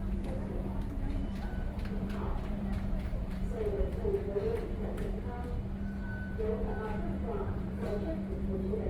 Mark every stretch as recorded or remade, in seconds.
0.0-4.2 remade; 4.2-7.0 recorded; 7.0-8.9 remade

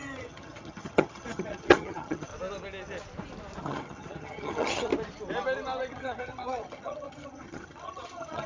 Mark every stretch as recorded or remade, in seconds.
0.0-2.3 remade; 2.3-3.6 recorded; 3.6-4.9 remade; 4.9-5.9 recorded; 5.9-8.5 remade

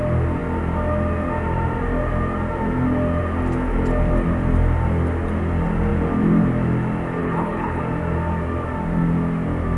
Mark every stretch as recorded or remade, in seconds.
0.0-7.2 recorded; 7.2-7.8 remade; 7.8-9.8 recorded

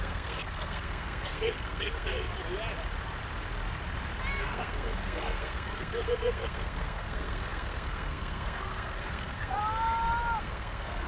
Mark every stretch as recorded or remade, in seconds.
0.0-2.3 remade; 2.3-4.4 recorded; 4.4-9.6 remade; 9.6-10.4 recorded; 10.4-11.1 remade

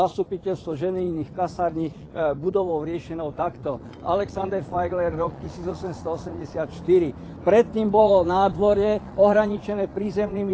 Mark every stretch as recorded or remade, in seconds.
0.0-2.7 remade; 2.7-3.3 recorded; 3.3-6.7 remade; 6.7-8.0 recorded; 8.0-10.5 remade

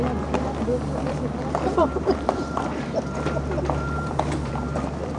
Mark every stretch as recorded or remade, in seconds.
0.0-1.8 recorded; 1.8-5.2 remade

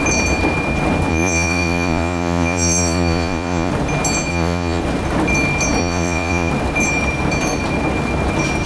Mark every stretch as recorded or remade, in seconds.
0.0-1.1 recorded; 1.1-3.7 remade; 3.7-4.3 recorded; 4.3-4.8 remade; 4.8-5.8 recorded; 5.8-6.5 remade; 6.5-8.7 recorded

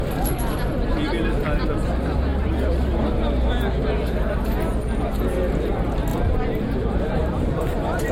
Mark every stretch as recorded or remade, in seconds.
0.0-6.1 recorded; 6.1-7.5 remade; 7.5-8.1 recorded